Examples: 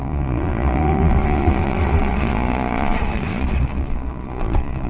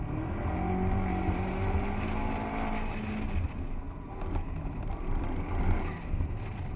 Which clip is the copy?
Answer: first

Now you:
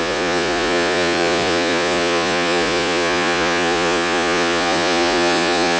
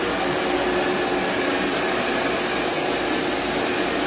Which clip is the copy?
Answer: first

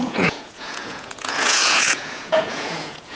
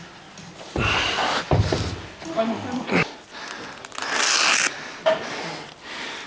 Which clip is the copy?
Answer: first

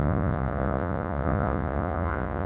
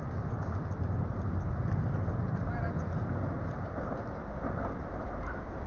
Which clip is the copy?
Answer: first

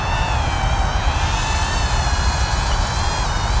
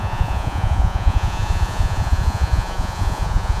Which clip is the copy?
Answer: second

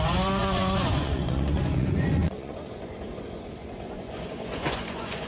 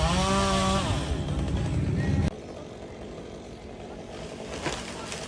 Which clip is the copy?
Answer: first